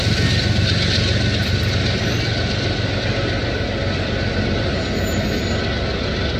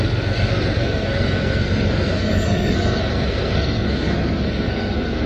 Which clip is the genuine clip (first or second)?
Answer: first